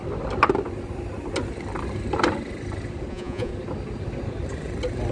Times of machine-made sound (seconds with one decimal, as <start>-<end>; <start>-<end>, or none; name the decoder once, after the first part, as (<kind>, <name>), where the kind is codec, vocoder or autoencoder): 3.1-3.5 (vocoder, Vocos)